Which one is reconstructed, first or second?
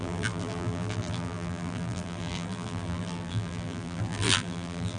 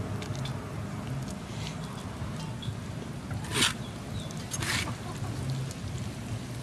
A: first